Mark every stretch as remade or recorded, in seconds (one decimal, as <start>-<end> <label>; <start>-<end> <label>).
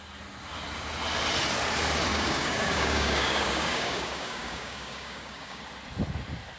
0.0-2.1 recorded; 2.1-5.6 remade; 5.6-6.6 recorded